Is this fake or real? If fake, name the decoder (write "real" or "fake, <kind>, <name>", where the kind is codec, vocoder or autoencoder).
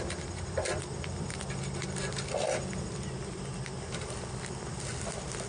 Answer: real